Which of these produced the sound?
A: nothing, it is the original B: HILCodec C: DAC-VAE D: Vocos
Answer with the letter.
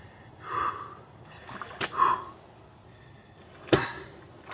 A